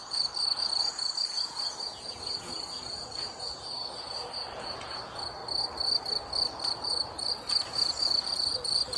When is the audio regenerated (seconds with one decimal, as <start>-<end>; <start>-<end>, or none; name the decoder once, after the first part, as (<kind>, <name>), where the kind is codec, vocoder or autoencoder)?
0.0-5.4 (vocoder, Vocos); 6.7-9.0